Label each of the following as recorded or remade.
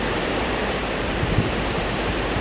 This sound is remade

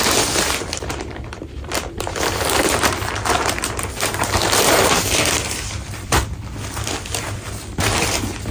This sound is remade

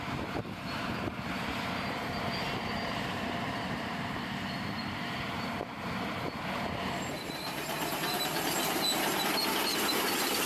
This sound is remade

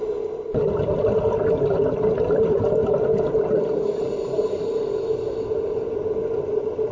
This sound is recorded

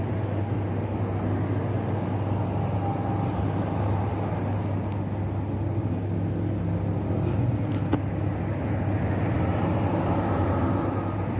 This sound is recorded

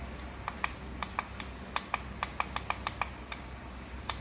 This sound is recorded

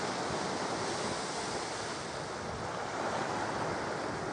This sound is recorded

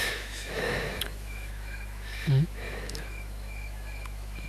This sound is remade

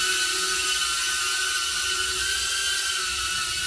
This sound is recorded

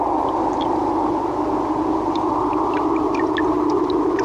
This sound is recorded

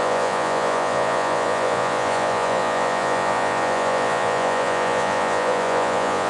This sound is remade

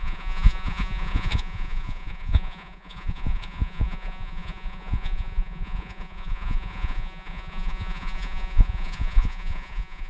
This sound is remade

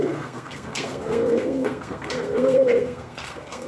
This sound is remade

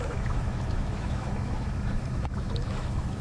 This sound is remade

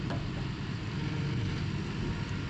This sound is recorded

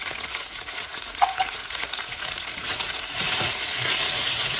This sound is remade